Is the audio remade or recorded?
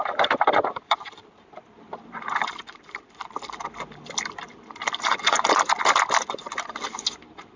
remade